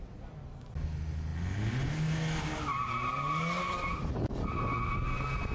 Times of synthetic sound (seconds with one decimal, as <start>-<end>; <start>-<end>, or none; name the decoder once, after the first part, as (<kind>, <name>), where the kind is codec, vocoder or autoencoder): none